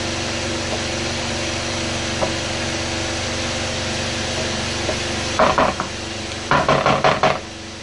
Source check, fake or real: real